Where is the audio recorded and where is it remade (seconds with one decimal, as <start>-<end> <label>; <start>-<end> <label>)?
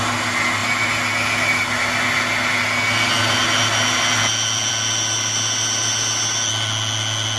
0.0-7.4 recorded